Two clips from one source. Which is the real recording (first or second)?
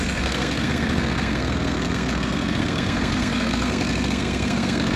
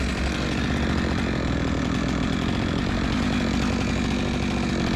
second